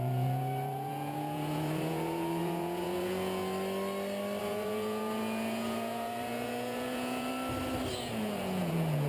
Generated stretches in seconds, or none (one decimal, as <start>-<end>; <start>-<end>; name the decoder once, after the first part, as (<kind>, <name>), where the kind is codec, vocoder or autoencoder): 0.0-3.4 (vocoder, Vocos); 4.4-7.3; 7.9-9.1